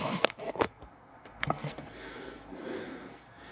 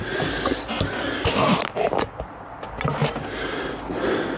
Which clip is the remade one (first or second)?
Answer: first